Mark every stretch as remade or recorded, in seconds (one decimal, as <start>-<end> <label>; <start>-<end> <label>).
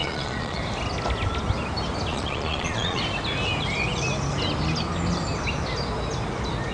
0.0-0.6 remade; 0.6-2.1 recorded; 2.1-3.0 remade; 3.0-6.7 recorded